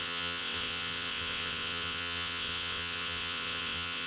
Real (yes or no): no